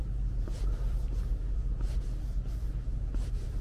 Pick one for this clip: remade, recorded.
remade